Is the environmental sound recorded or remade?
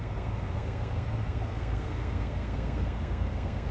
remade